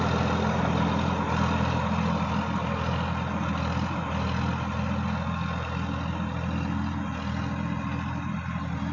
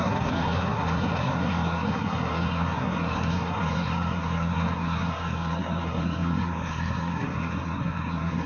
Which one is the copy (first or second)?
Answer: second